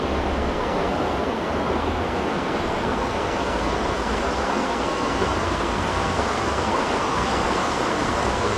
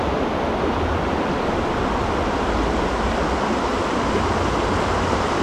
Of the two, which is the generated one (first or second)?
first